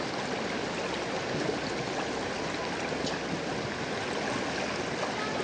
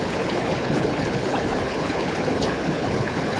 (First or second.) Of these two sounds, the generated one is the second